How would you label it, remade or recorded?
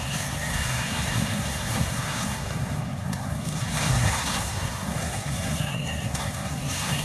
remade